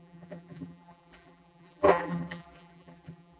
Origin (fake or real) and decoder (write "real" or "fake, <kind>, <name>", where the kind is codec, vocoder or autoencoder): fake, vocoder, BigVGAN v2